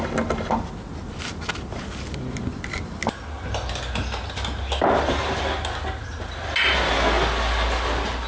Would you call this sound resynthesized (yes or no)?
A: no